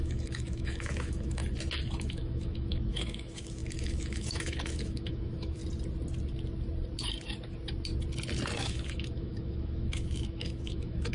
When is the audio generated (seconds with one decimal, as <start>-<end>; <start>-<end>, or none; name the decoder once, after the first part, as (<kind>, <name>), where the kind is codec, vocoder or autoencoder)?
0.0-1.4 (autoencoder, DAC-VAE); 2.0-5.6; 8.6-11.1